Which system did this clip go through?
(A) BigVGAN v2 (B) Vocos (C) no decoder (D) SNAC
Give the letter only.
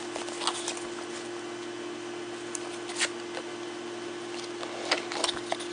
C